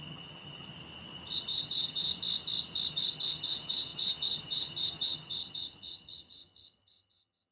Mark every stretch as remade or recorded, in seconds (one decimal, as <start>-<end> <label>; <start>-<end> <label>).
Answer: 0.0-0.7 remade; 0.7-1.4 recorded; 1.4-2.1 remade; 2.1-2.9 recorded; 2.9-7.5 remade